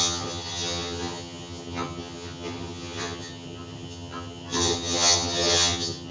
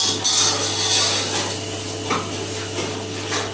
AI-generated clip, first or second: first